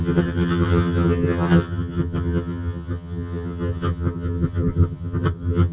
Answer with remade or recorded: remade